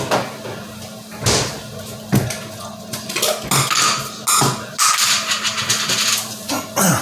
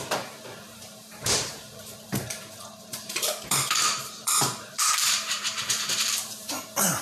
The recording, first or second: first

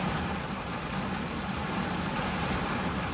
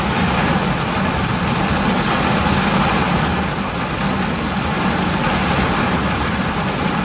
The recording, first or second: second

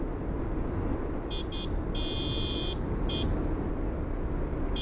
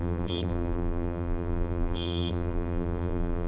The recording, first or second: first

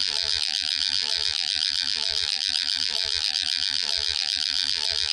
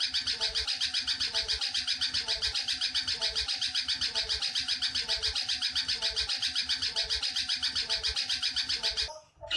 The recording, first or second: second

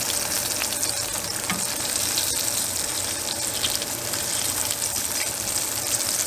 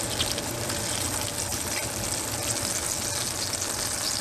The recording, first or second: second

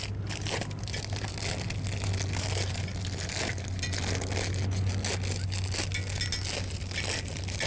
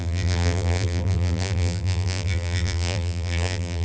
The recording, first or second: first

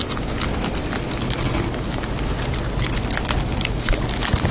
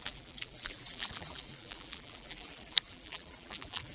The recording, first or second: first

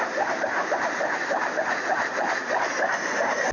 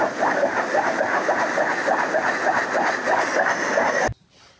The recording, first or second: second